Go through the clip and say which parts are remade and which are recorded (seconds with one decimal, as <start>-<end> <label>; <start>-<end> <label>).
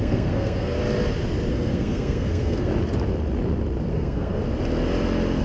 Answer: 0.0-0.8 remade; 0.8-1.5 recorded; 1.5-2.7 remade; 2.7-3.9 recorded; 3.9-4.4 remade; 4.4-5.4 recorded